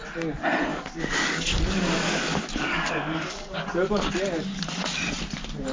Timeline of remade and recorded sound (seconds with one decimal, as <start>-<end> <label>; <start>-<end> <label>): 0.0-0.7 recorded; 0.7-4.1 remade; 4.1-5.7 recorded